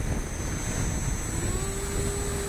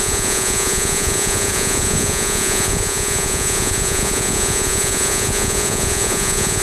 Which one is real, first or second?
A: first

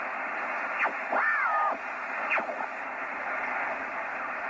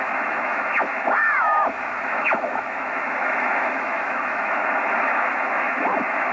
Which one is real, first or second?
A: first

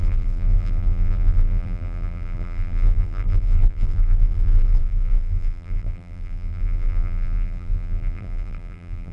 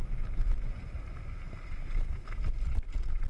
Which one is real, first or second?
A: second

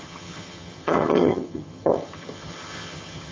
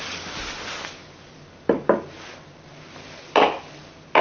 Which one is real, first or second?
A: second